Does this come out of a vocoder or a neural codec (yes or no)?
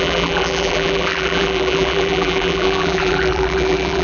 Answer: yes